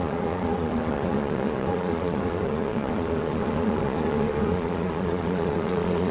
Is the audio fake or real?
fake